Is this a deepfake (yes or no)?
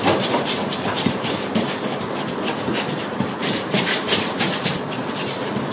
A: yes